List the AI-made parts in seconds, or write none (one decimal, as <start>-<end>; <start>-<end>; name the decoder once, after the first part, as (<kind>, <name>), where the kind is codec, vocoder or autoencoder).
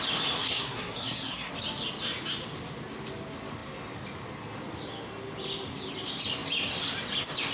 0.4-1.5 (codec, SNAC)